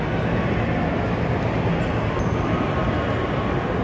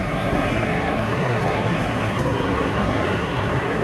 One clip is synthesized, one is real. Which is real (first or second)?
first